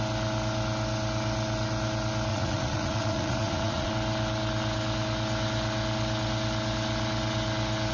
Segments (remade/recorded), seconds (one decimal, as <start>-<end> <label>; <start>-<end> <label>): 0.0-2.3 recorded; 2.3-3.9 remade; 3.9-7.9 recorded